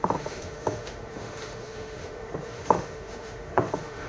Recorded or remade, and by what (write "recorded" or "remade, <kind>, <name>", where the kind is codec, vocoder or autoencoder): remade, autoencoder, DAC-VAE